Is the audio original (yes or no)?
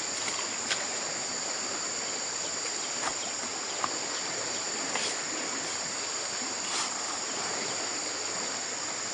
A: yes